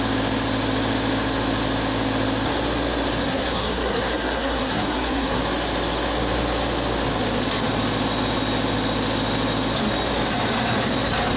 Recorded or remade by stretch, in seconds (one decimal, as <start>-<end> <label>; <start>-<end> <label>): 0.0-3.2 recorded; 3.2-5.4 remade; 5.4-11.4 recorded